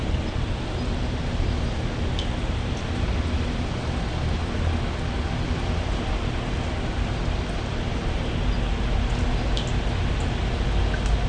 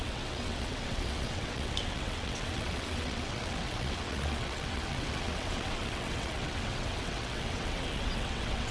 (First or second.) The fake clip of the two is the second